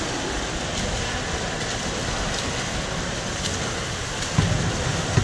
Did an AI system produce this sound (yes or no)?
no